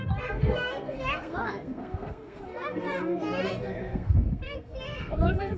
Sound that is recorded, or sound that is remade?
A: remade